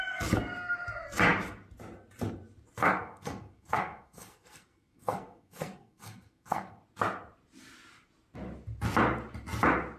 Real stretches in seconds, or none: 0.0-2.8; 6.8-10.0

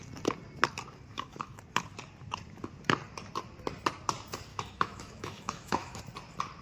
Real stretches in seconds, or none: 0.0-1.1; 1.6-4.5; 6.0-6.6

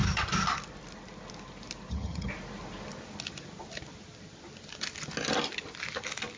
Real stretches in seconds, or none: 0.0-1.9; 2.3-6.4

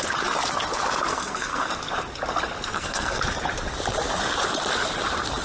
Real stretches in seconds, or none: 0.0-1.1; 1.7-2.7; 3.2-5.4

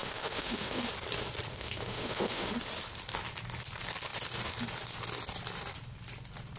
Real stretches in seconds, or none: 0.9-1.5; 2.5-6.6

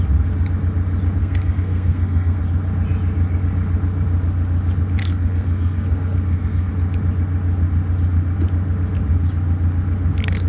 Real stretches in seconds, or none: 0.0-1.2; 2.4-5.0; 6.7-10.5

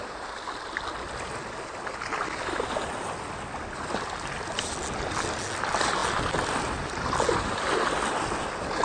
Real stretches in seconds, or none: 0.0-8.8